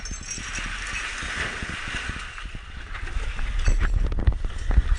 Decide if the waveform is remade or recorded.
recorded